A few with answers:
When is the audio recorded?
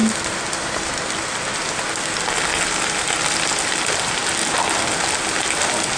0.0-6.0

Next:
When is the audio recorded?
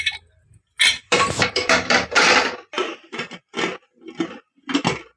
0.0-1.0; 2.3-5.2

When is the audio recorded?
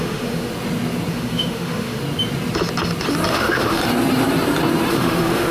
0.5-1.1; 2.0-3.3; 3.8-4.9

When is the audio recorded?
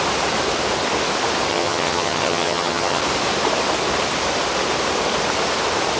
0.0-1.5; 3.0-6.0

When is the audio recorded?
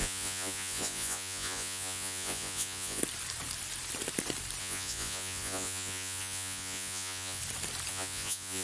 3.0-4.6; 7.4-7.9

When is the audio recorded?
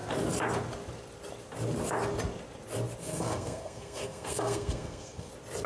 0.0-3.0; 5.3-5.7